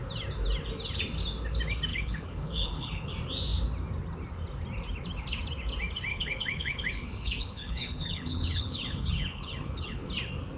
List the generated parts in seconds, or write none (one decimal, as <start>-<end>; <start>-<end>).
1.9-3.1; 6.1-10.1